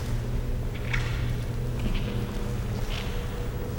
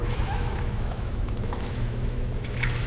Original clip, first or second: first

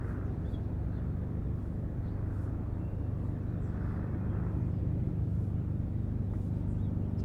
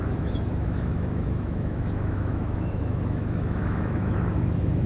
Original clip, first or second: first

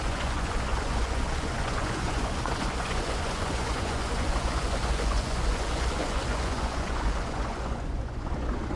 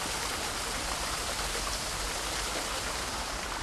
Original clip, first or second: second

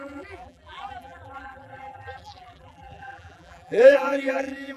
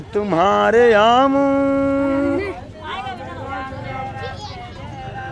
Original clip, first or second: second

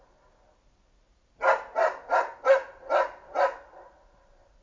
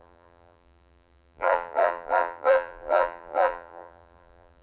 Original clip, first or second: first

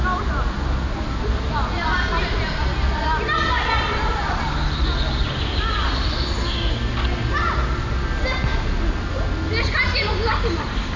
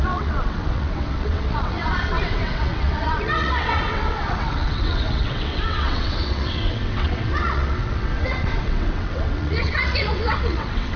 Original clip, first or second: first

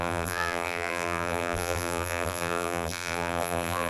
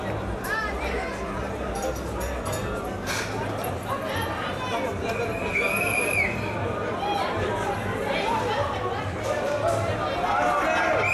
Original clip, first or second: second